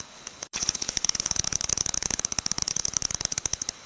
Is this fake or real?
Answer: fake